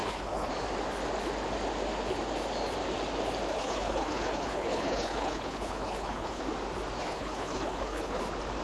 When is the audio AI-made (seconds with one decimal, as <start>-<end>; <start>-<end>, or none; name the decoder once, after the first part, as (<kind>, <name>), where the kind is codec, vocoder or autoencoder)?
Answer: 0.0-0.5 (codec, HILCodec); 3.5-6.4; 7.0-8.2